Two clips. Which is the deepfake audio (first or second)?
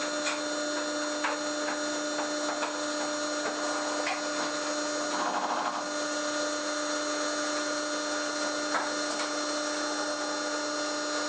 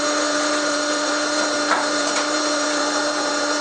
second